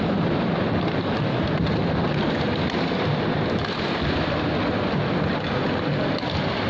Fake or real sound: real